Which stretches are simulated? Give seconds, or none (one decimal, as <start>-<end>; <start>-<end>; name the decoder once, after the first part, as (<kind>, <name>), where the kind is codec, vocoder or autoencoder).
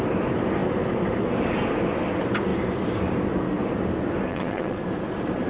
4.3-4.8 (vocoder, WaveNeXt)